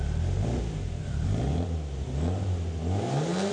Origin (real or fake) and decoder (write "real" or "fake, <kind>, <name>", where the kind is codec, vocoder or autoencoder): real